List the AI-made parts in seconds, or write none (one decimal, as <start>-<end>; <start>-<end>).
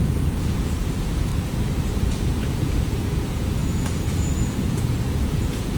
0.0-1.3; 2.0-5.8